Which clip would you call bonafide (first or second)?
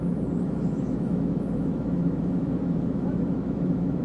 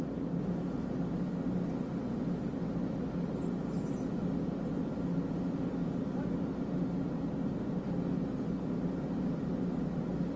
second